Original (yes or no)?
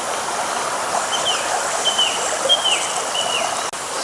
yes